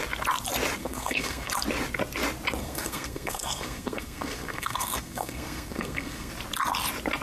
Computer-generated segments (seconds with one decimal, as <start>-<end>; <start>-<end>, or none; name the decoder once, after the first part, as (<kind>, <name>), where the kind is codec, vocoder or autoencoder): 0.8-1.5 (codec, SNAC); 2.6-6.3